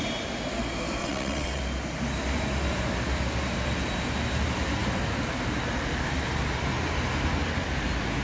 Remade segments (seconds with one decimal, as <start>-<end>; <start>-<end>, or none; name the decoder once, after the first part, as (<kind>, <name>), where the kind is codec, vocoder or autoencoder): 1.0-1.6 (vocoder, WaveNeXt)